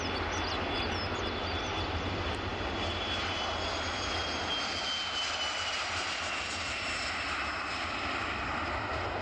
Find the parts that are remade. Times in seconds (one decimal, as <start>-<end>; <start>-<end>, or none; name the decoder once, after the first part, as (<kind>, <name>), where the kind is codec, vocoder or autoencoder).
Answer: none